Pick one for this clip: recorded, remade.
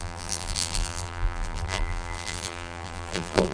remade